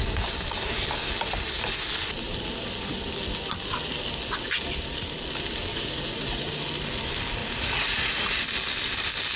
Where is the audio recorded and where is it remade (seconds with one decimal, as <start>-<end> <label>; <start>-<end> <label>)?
0.0-5.7 recorded; 5.7-6.4 remade; 6.4-7.4 recorded; 7.4-8.4 remade; 8.4-9.4 recorded